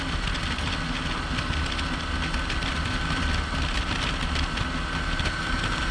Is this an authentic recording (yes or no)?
yes